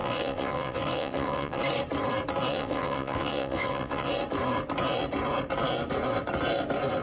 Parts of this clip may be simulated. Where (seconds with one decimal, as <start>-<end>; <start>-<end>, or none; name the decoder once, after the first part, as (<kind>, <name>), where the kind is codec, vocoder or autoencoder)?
0.0-1.6 (vocoder, WaveNeXt); 2.5-4.1